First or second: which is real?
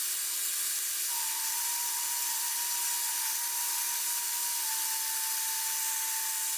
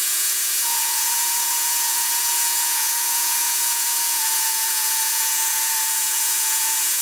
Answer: first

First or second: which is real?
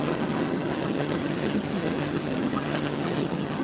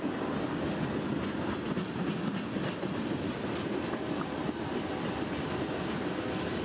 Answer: second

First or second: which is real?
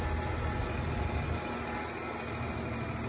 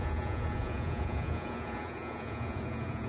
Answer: first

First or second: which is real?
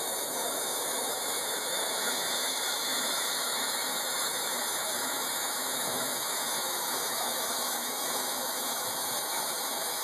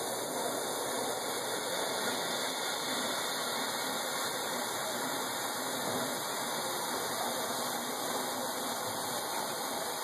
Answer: second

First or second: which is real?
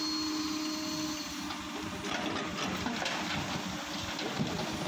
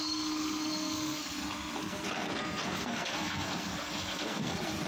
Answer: first